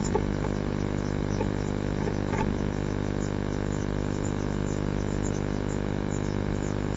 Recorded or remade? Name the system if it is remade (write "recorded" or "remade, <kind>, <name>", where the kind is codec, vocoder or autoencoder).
remade, autoencoder, DAC-VAE